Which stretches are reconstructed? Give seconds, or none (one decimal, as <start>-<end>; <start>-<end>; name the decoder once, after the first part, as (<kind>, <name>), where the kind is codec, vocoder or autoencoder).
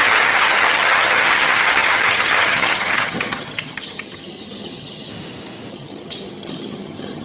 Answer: 0.0-5.1 (vocoder, HiFi-GAN); 5.7-7.2